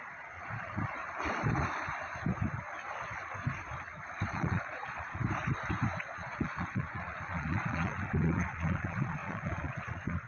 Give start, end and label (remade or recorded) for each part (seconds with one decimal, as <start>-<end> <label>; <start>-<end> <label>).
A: 0.0-1.0 remade; 1.0-4.3 recorded; 4.3-5.2 remade; 5.2-6.0 recorded; 6.0-10.3 remade